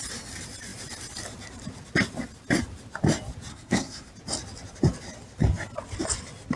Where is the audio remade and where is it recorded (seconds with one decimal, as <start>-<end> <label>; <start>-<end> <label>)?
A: 0.0-3.5 recorded; 3.5-4.1 remade; 4.1-6.6 recorded